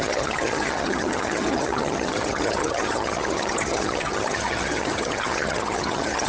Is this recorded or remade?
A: remade